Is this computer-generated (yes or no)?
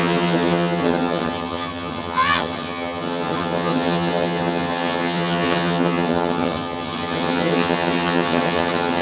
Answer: yes